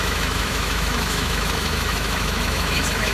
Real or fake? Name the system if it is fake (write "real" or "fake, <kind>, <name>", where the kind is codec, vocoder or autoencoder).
fake, autoencoder, DAC-VAE